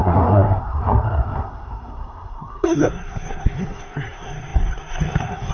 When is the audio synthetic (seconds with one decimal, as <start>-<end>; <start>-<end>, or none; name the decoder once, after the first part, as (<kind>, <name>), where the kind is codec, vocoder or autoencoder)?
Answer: 0.0-5.5 (codec, SNAC)